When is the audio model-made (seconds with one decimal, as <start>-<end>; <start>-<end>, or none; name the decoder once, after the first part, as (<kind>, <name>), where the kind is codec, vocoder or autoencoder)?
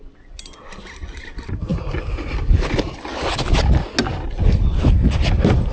none